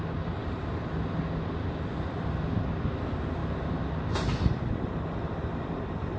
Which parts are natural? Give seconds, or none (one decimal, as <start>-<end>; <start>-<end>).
0.0-0.4; 1.2-1.9; 2.6-6.2

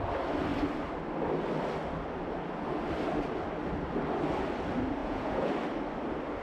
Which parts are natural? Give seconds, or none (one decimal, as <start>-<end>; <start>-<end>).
0.0-5.0; 5.5-6.4